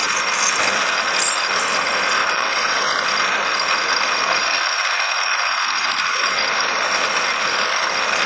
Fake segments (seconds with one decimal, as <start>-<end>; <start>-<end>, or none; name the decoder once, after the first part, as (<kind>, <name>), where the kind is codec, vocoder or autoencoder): 2.2-2.9 (vocoder, WaveNeXt)